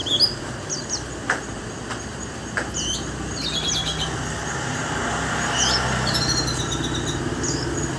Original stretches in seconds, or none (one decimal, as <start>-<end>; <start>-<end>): 0.0-8.0